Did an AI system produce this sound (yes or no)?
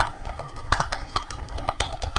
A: yes